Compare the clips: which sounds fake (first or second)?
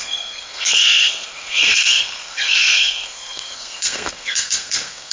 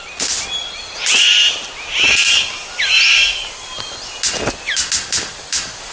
first